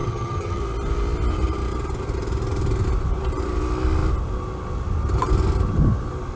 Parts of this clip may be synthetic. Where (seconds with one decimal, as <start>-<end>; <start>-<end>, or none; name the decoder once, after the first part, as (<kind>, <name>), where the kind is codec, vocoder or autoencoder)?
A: 0.0-0.6 (vocoder, HiFi-GAN)